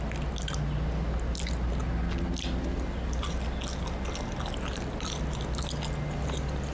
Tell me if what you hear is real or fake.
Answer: real